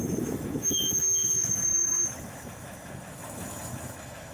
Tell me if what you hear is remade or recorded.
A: remade